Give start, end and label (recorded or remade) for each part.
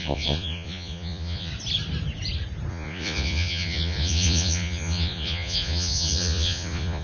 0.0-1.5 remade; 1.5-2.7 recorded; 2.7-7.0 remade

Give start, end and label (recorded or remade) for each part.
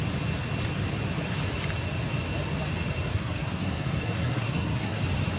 0.0-3.1 recorded; 3.1-5.0 remade; 5.0-5.4 recorded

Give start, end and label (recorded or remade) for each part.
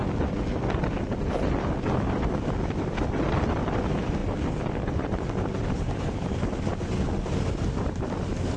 0.0-8.6 recorded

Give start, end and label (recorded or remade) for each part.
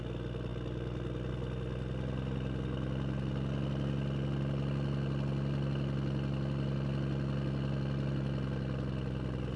0.0-9.6 recorded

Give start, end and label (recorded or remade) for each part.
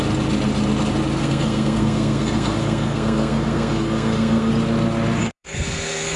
0.0-1.2 recorded; 1.2-4.5 remade; 4.5-5.2 recorded; 5.2-6.2 remade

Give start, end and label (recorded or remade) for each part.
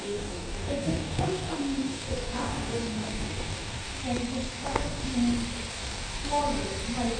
0.0-4.0 remade; 4.0-4.5 recorded; 4.5-5.1 remade; 5.1-5.7 recorded; 5.7-6.4 remade; 6.4-7.2 recorded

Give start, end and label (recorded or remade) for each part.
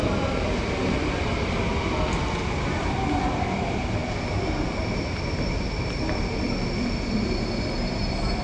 0.0-8.4 recorded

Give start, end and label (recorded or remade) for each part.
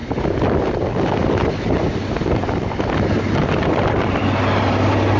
0.0-0.5 remade; 0.5-5.2 recorded